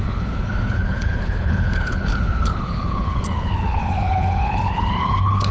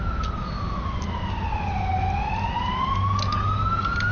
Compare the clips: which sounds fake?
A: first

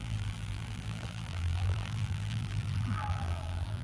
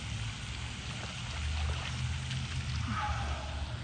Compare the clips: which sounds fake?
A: first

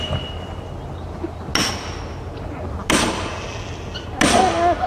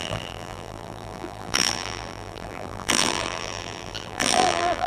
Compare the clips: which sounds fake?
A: second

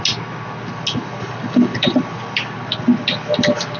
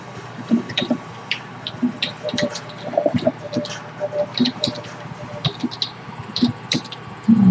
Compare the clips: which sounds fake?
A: second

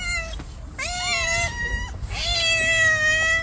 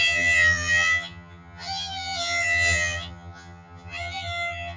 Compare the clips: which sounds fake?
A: second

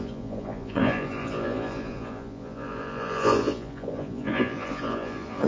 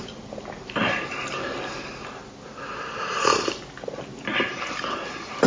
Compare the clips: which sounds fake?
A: first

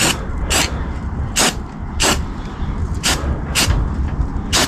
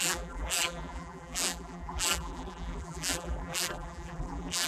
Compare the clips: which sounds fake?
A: second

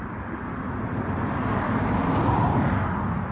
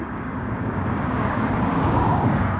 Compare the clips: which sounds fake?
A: second